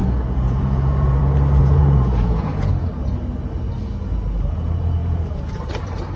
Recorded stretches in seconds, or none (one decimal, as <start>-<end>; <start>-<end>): 1.2-1.6; 2.7-5.0; 5.6-6.2

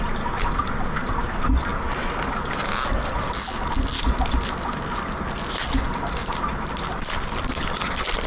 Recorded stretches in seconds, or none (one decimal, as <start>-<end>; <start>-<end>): 0.0-8.3

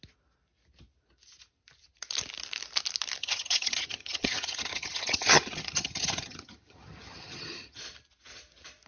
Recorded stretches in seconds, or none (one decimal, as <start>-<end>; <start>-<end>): 0.0-3.2; 7.8-8.9

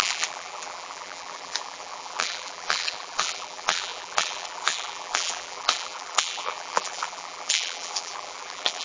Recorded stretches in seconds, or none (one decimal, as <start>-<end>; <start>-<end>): none

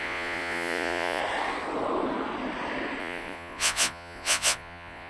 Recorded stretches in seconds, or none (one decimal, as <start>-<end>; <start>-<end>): 1.2-3.0

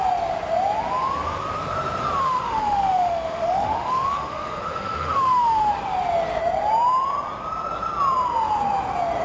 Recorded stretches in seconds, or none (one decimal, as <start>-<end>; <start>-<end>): 0.0-2.2; 5.7-9.2

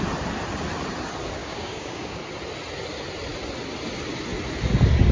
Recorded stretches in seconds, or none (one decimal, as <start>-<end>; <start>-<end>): 0.0-1.4; 2.2-5.1